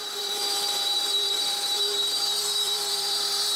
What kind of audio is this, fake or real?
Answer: fake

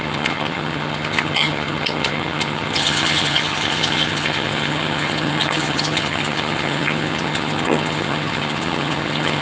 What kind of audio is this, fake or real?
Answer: fake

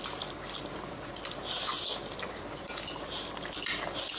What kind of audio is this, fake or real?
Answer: real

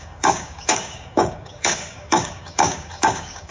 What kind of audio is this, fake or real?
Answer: fake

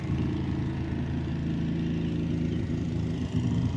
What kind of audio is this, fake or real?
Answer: real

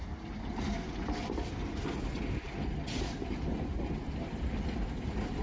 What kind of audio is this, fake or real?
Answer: real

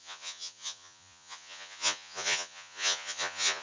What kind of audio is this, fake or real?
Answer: fake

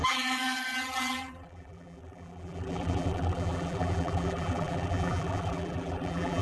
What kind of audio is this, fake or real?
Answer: fake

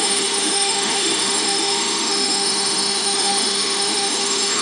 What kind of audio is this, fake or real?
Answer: fake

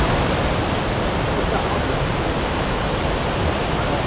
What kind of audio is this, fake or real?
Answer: real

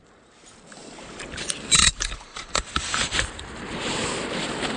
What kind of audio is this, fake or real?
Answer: fake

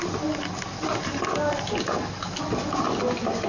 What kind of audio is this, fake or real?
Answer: real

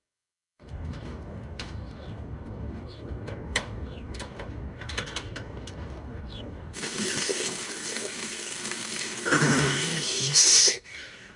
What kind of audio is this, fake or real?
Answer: fake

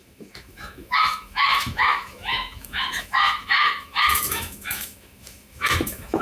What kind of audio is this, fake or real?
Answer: fake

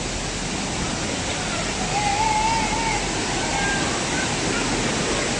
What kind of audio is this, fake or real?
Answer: real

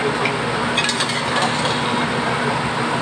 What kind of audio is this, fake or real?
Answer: real